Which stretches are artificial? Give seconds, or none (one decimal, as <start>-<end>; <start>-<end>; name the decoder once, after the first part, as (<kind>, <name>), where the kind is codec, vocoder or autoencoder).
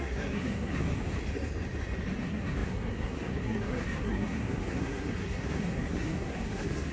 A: 0.0-1.0 (codec, SNAC); 2.2-6.9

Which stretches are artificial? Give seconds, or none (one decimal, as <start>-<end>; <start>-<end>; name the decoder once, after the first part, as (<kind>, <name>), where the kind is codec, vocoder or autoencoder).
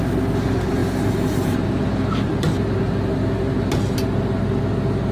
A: none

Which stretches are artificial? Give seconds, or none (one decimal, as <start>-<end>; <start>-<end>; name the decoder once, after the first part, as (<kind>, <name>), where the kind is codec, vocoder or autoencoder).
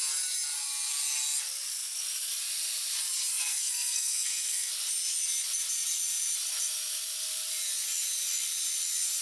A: 3.3-4.7 (codec, SNAC)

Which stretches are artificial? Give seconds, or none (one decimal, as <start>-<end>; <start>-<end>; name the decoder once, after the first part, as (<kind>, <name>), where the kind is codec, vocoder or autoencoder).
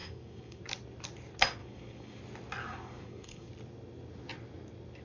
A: 0.0-0.6 (codec, DAC); 1.6-2.2; 2.6-3.5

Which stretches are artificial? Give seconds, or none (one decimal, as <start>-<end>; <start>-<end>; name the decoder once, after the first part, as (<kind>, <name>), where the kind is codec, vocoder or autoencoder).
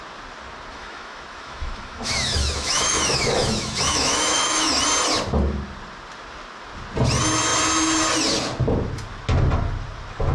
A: 0.7-4.7 (autoencoder, DAC-VAE)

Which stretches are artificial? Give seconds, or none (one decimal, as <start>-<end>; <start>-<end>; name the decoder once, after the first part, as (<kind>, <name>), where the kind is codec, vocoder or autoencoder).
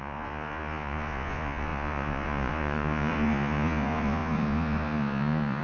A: 0.0-5.6 (vocoder, Vocos)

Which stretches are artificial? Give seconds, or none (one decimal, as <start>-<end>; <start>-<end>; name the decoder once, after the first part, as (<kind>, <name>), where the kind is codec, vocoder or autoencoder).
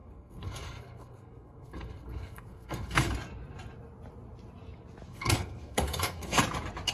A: 0.0-3.1 (codec, SNAC); 5.1-6.4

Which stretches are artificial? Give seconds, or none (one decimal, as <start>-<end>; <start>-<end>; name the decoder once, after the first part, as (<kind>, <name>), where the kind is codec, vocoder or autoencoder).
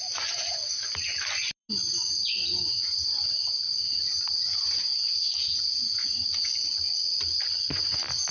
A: none